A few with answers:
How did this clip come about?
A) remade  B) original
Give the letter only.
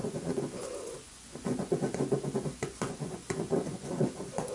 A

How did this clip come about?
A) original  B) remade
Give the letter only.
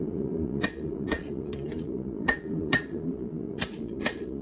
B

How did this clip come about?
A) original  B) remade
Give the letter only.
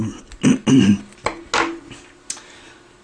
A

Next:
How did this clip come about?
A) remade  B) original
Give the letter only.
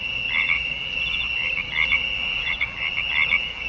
A